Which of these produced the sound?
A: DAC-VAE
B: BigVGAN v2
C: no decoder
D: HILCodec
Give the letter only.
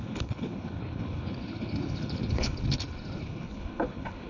D